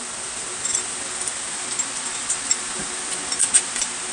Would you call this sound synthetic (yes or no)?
no